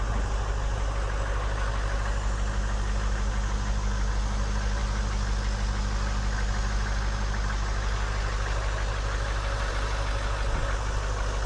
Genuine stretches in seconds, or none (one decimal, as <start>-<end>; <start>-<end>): 0.0-11.5